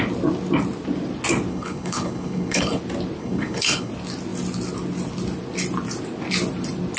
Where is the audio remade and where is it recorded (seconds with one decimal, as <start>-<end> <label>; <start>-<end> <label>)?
0.0-1.5 recorded; 1.5-2.8 remade; 2.8-3.2 recorded; 3.2-3.9 remade; 3.9-7.0 recorded